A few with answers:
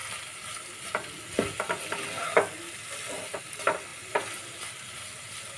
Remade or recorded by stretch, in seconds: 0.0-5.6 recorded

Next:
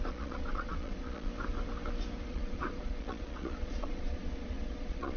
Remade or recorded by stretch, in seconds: 0.0-1.3 remade; 1.3-2.3 recorded; 2.3-5.2 remade

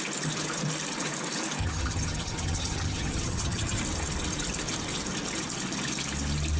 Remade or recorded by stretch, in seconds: 0.0-1.6 recorded; 1.6-3.8 remade; 3.8-6.6 recorded

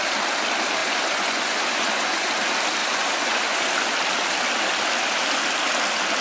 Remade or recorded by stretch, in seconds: 0.0-0.8 recorded; 0.8-2.3 remade; 2.3-2.8 recorded; 2.8-3.7 remade; 3.7-6.2 recorded

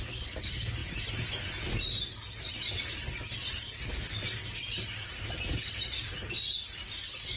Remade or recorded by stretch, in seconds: 0.0-0.8 remade; 0.8-5.2 recorded; 5.2-7.4 remade

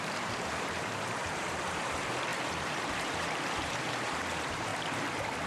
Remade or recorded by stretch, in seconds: 0.0-4.7 remade; 4.7-5.5 recorded

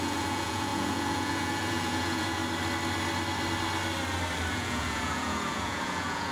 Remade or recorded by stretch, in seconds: 0.0-2.4 remade; 2.4-4.5 recorded; 4.5-6.3 remade

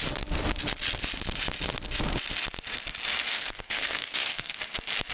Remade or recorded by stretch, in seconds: 0.0-3.3 recorded; 3.3-4.6 remade; 4.6-5.1 recorded